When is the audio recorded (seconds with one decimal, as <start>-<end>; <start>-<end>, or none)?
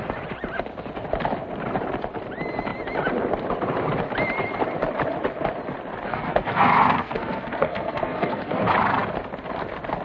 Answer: 0.0-6.1; 8.6-10.0